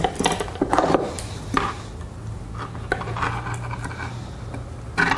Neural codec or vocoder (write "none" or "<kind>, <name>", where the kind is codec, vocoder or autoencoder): none